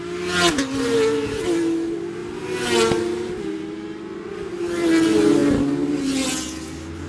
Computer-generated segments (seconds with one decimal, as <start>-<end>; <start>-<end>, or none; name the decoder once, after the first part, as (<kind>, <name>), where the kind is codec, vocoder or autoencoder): none